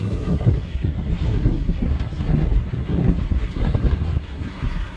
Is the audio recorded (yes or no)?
no